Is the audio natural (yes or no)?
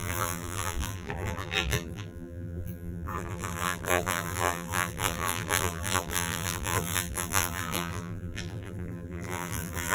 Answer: no